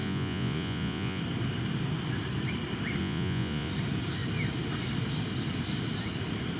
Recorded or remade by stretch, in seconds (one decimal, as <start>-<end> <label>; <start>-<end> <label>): 0.0-1.2 remade; 1.2-3.0 recorded; 3.0-3.7 remade; 3.7-6.6 recorded